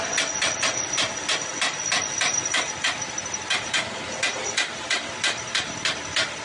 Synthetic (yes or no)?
no